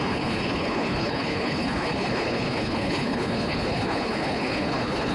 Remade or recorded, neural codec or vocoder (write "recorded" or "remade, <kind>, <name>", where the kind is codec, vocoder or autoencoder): remade, codec, HILCodec